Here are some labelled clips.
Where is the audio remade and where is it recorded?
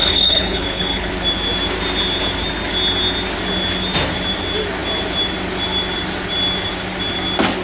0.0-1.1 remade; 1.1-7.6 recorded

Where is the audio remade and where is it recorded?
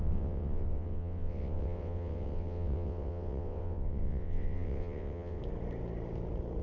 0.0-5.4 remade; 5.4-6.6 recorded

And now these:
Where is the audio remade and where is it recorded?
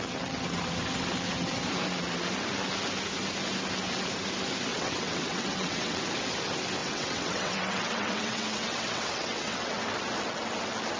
0.0-4.7 recorded; 4.7-6.0 remade; 6.0-6.8 recorded; 6.8-9.8 remade; 9.8-11.0 recorded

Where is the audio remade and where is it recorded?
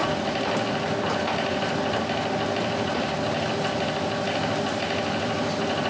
0.0-5.9 recorded